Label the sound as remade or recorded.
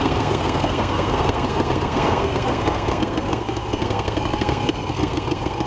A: remade